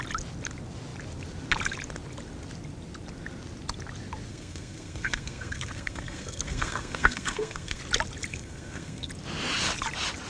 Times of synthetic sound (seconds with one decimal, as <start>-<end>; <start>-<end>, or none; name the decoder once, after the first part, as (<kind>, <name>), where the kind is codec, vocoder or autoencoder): 4.3-7.8 (codec, SNAC); 8.3-9.1